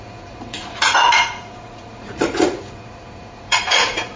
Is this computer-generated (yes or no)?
yes